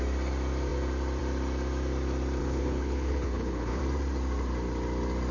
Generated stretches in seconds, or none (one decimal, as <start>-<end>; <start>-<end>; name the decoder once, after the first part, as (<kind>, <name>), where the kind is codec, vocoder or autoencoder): 2.4-3.8 (codec, HILCodec)